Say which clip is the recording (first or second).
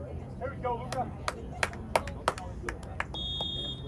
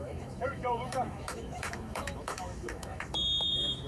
first